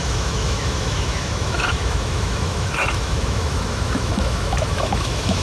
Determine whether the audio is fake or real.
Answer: fake